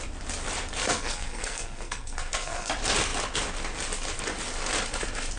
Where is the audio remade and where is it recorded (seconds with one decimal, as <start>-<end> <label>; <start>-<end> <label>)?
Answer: 0.0-0.8 recorded; 0.8-2.7 remade; 2.7-5.4 recorded